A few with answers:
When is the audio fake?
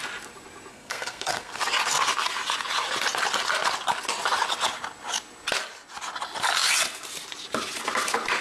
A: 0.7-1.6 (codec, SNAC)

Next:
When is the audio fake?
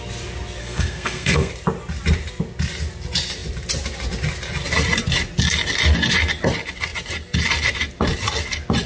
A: 0.6-1.5 (codec, SNAC)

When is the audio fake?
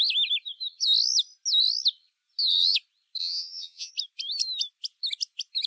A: 3.2-3.9 (vocoder, HiFi-GAN)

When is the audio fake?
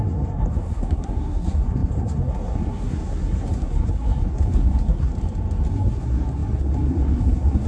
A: 0.0-5.1 (codec, SNAC); 5.7-7.7